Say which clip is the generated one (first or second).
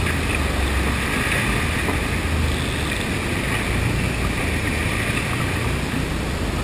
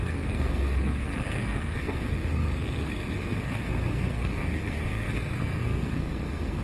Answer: second